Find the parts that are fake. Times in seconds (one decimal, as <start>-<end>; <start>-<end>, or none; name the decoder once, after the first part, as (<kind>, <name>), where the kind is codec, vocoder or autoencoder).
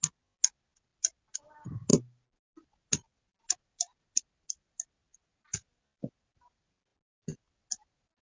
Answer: none